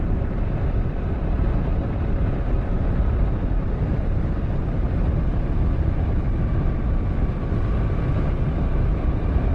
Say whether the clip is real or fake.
real